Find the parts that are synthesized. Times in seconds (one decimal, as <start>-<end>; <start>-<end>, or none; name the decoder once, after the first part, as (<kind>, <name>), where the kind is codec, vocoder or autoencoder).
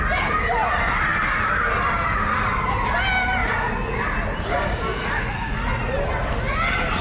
3.4-4.0 (vocoder, Vocos); 4.9-5.9